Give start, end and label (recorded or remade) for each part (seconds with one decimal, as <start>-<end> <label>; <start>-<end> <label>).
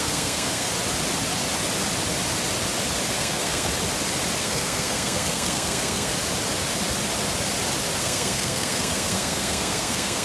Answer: 0.0-0.7 remade; 0.7-3.2 recorded; 3.2-3.7 remade; 3.7-4.4 recorded; 4.4-6.1 remade; 6.1-8.0 recorded; 8.0-10.2 remade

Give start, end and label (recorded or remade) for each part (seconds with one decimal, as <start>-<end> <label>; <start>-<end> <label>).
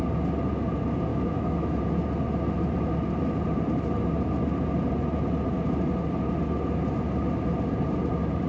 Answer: 0.0-1.1 recorded; 1.1-1.8 remade; 1.8-8.5 recorded